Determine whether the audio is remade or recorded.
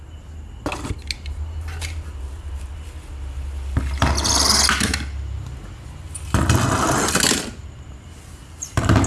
recorded